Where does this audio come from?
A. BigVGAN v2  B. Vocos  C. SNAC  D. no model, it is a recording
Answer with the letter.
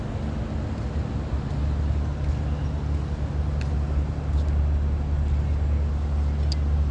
D